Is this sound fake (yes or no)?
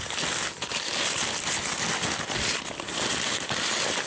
no